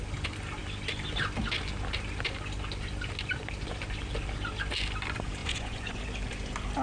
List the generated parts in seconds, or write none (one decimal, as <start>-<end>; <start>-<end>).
5.4-6.0